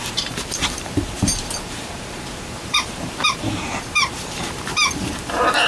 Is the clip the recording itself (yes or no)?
no